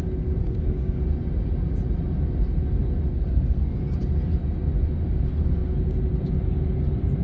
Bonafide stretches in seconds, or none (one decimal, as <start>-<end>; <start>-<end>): 0.0-0.4; 1.0-3.1; 3.8-7.2